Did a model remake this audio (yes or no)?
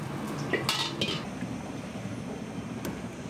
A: no